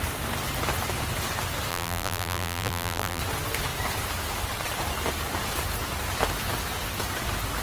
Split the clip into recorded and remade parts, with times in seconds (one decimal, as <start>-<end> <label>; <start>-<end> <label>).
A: 0.0-1.7 recorded; 1.7-3.2 remade; 3.2-7.6 recorded